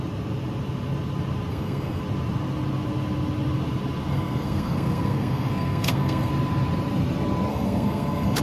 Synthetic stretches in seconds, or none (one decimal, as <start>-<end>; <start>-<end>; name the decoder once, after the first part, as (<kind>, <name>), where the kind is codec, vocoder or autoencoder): 1.5-2.0 (codec, SNAC); 4.1-6.3; 7.5-8.4